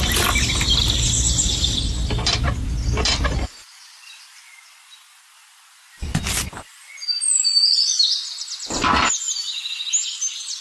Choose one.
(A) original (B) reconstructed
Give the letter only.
A